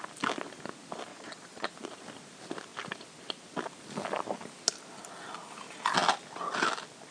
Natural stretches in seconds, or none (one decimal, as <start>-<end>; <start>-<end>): 0.0-1.1; 1.7-7.1